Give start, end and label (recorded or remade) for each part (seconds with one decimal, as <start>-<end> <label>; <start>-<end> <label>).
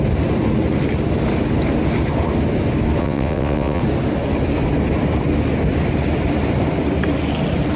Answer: 0.0-3.0 recorded; 3.0-3.8 remade; 3.8-7.8 recorded